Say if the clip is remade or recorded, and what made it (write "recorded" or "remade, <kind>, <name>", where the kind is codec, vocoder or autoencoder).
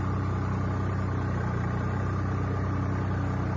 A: recorded